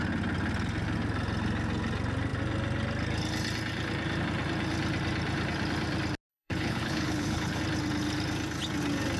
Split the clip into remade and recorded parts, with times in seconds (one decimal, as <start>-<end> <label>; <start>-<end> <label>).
0.0-6.3 recorded; 6.3-7.6 remade; 7.6-9.2 recorded